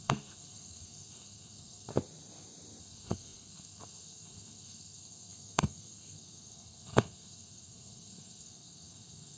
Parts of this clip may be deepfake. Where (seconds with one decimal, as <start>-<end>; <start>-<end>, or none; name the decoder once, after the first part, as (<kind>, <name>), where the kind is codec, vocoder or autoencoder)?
0.0-1.9 (codec, SNAC); 2.8-9.4